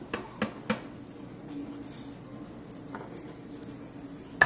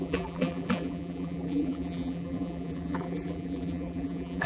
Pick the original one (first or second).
first